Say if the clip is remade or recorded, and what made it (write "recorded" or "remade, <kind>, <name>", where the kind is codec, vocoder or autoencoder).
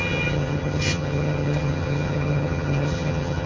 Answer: remade, vocoder, HiFi-GAN